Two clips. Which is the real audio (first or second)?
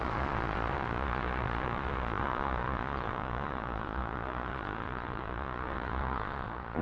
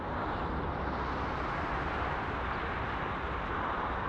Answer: second